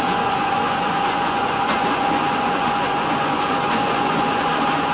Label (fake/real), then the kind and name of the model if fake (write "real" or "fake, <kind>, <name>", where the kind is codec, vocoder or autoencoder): fake, vocoder, Vocos